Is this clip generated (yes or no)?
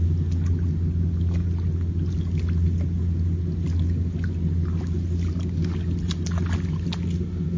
no